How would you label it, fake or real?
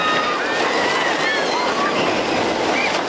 real